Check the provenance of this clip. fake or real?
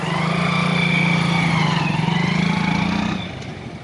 real